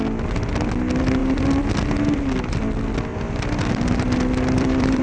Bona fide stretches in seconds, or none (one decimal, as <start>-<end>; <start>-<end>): 0.6-1.2; 1.7-3.1